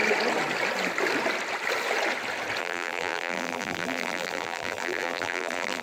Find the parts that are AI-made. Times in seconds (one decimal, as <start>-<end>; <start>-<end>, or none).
2.6-5.8